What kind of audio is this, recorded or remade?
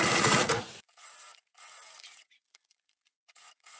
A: remade